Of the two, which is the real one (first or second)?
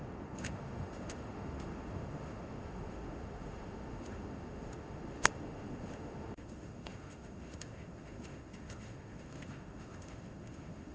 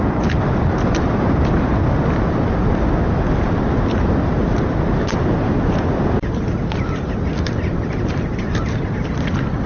second